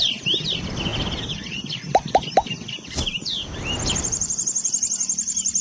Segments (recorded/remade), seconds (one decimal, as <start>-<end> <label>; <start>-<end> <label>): 0.0-5.6 recorded